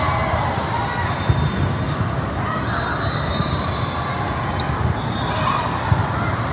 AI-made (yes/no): no